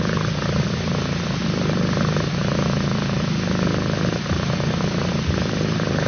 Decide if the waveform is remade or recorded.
recorded